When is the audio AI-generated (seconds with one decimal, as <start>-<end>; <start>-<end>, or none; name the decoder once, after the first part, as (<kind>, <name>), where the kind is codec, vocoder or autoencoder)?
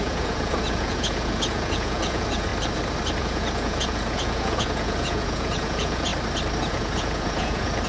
0.0-2.5 (vocoder, Vocos); 3.2-6.1; 6.6-7.9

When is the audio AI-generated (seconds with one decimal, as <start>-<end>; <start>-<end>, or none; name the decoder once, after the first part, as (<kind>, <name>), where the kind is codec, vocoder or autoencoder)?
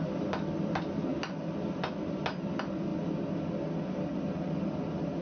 none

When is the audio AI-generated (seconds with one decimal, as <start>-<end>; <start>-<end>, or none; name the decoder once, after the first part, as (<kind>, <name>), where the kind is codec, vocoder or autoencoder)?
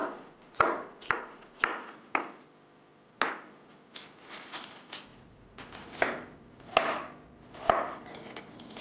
0.0-1.6 (vocoder, Vocos); 5.1-5.7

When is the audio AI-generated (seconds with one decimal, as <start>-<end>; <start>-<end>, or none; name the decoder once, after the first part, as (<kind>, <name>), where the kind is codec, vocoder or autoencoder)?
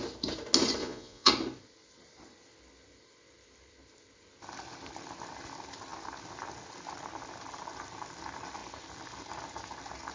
0.8-1.3 (vocoder, Vocos)